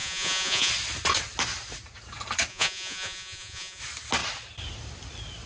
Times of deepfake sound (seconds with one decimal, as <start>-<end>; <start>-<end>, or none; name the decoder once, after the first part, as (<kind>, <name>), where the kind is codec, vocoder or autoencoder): 0.0-0.7 (vocoder, Vocos); 2.5-3.8

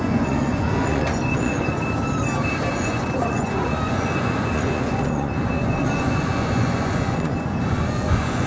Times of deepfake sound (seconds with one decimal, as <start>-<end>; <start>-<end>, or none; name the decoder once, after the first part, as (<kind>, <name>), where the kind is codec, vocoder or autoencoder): 0.0-1.8 (vocoder, Vocos); 2.7-8.5

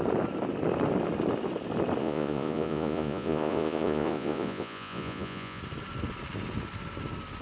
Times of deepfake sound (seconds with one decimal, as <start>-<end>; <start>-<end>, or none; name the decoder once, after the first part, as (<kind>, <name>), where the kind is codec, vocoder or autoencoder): 2.0-5.6 (vocoder, Vocos)

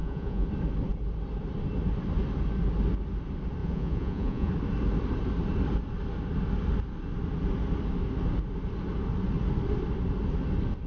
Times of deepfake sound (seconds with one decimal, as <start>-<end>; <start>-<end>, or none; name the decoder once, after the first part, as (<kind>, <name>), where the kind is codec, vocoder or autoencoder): 0.0-0.5 (vocoder, Vocos); 3.6-4.5

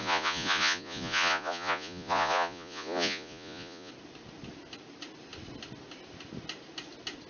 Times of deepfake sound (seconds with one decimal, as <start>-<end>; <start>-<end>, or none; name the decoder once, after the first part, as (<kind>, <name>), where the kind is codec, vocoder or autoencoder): 0.0-3.9 (vocoder, Vocos)

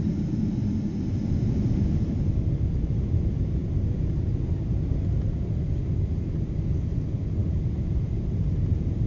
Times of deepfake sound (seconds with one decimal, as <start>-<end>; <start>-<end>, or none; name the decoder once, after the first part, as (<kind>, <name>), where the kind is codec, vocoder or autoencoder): none